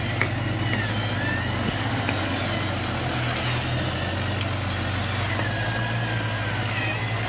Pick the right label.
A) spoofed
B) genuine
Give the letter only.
B